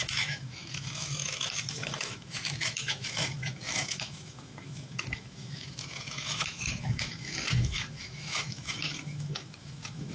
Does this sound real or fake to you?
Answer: fake